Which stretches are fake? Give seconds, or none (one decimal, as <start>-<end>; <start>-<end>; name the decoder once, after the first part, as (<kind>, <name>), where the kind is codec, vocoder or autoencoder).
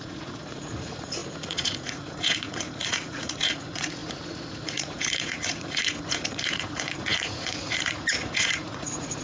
0.0-9.2 (vocoder, Vocos)